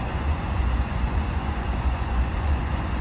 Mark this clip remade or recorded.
remade